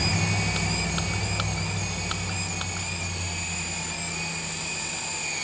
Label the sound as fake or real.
real